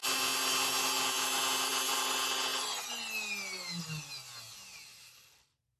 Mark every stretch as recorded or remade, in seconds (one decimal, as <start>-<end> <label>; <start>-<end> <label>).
0.0-5.8 recorded